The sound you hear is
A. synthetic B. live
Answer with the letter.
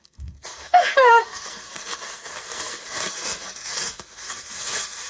A